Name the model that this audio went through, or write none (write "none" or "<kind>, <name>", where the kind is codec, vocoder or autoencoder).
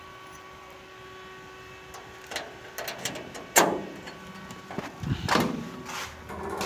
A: none